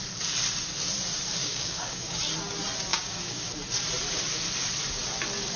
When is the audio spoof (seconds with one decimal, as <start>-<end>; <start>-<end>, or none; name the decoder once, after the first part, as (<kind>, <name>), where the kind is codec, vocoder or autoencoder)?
1.4-2.2 (codec, DAC); 2.9-3.5